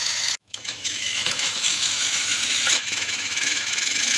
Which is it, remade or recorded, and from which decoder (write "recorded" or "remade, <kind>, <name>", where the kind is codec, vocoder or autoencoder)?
remade, autoencoder, DAC-VAE